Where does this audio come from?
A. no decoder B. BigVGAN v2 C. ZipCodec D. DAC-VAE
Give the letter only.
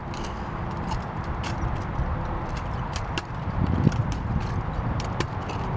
B